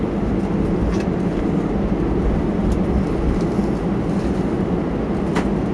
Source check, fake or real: real